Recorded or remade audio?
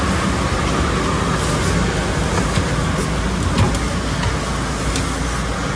recorded